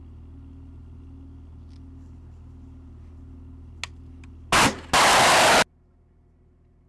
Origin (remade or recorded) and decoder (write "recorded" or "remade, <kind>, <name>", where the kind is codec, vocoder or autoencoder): recorded